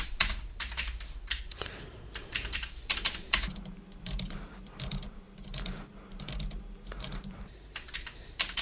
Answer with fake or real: fake